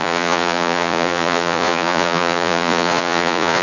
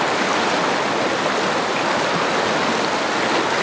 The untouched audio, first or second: second